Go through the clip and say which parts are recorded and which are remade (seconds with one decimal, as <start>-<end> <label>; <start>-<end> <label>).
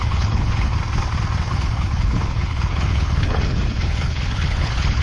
0.0-0.7 remade; 0.7-1.5 recorded; 1.5-5.0 remade